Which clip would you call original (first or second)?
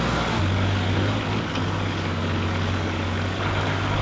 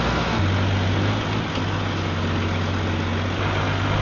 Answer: second